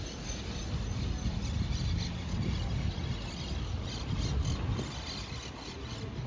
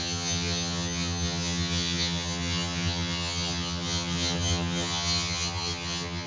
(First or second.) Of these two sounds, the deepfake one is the second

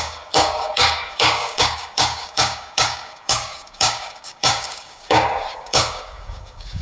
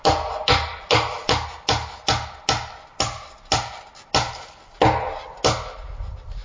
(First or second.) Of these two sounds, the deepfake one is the first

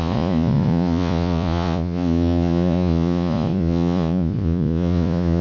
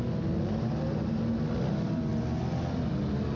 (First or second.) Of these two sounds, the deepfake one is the first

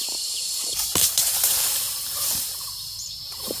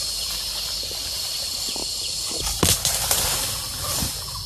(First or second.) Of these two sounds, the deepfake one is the first